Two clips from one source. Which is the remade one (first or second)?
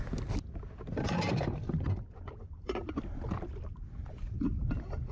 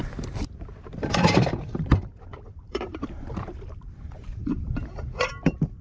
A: second